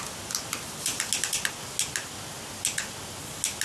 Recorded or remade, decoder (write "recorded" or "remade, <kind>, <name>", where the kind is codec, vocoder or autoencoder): recorded